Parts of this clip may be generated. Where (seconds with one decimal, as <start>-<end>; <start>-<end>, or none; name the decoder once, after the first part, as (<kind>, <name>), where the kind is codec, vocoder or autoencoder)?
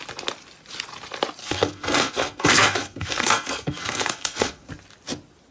1.4-4.7 (codec, SNAC)